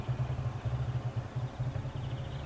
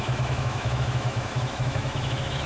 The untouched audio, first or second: first